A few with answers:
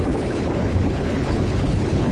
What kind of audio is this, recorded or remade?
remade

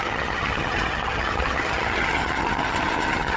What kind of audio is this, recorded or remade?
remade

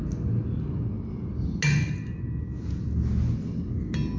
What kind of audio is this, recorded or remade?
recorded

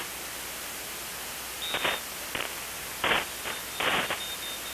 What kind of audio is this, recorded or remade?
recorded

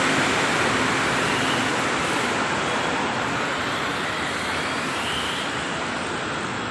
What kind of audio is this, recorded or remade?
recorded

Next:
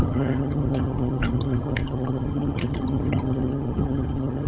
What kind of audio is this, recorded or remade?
remade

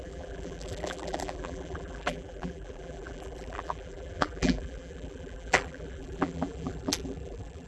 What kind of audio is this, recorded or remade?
remade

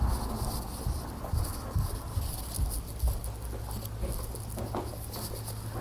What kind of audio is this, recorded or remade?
recorded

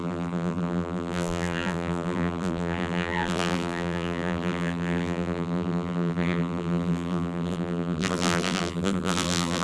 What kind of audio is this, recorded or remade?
remade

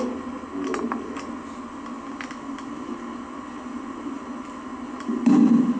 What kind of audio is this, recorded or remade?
recorded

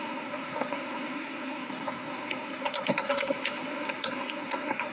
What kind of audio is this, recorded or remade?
remade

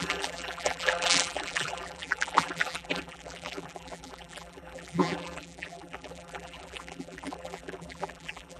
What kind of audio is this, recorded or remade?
remade